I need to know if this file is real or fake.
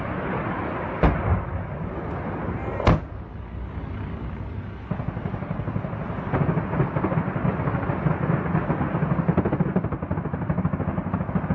real